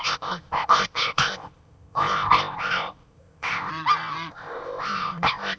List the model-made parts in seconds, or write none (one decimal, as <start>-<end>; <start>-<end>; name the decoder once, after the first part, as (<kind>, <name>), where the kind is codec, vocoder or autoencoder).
0.0-3.7 (codec, ZipCodec); 4.3-5.6